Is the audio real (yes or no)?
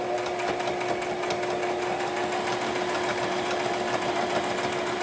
yes